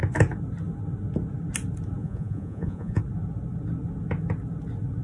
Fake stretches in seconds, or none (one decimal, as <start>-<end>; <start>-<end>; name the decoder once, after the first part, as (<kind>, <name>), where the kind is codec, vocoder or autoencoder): 2.0-3.0 (vocoder, Vocos)